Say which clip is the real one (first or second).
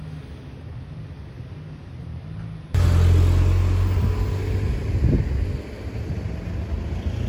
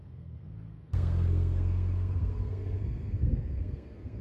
first